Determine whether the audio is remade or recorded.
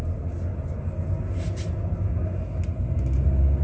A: recorded